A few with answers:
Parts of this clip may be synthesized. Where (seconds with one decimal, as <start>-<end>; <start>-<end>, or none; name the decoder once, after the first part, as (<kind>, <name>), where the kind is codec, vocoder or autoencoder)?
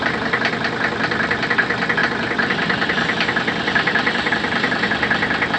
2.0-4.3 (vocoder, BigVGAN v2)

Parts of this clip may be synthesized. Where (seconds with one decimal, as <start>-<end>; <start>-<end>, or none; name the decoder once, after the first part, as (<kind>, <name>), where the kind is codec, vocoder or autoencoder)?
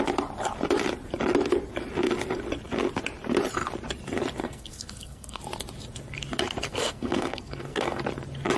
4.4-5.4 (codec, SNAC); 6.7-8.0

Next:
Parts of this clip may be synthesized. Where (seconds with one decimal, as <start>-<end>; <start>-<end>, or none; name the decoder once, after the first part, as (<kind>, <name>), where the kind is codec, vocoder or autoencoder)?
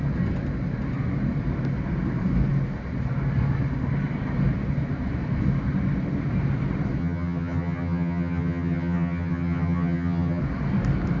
7.0-10.4 (vocoder, HiFi-GAN)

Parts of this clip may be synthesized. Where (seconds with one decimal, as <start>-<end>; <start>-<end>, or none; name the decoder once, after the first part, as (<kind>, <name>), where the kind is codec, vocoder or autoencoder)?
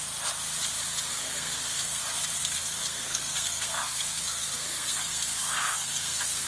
1.1-2.0 (codec, SNAC); 2.4-6.5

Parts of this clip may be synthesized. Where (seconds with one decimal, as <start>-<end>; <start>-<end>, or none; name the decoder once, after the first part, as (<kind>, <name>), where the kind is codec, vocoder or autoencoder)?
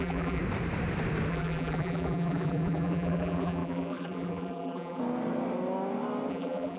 0.0-0.4 (vocoder, BigVGAN v2); 1.3-5.0; 6.3-6.8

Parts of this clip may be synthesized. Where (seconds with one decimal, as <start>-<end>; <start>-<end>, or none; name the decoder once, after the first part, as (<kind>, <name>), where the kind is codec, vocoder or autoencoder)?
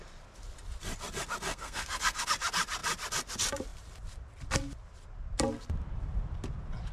1.5-2.3 (codec, SNAC)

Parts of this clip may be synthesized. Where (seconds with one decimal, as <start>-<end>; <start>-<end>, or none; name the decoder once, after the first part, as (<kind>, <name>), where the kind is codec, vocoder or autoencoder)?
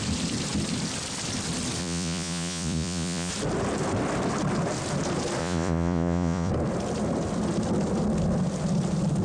1.8-3.3 (vocoder, Vocos); 5.4-6.5